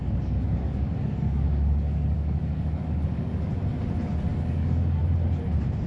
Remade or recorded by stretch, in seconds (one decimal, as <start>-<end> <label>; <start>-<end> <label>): 0.0-3.5 remade; 3.5-4.3 recorded; 4.3-5.0 remade; 5.0-5.9 recorded